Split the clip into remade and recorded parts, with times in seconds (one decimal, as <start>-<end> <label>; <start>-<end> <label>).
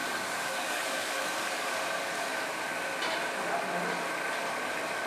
0.0-1.8 remade; 1.8-5.1 recorded